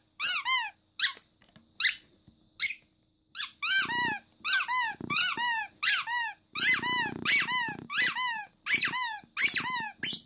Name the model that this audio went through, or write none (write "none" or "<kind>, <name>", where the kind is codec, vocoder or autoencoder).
none